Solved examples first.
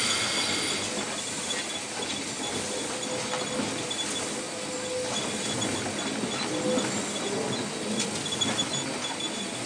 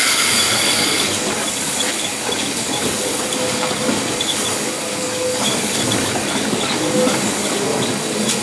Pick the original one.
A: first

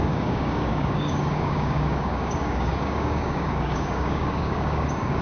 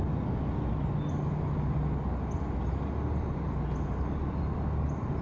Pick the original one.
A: second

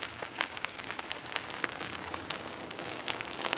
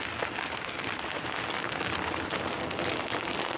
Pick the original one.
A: second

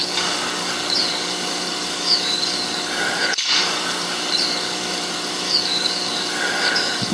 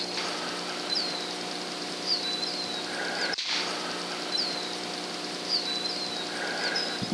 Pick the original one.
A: second